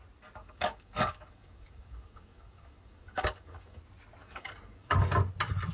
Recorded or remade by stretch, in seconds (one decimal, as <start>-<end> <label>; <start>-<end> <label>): 0.0-0.4 recorded; 0.4-3.8 remade; 3.8-4.2 recorded; 4.2-5.0 remade; 5.0-5.7 recorded